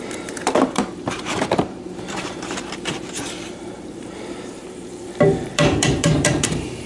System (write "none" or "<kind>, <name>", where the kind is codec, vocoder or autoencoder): vocoder, BigVGAN v2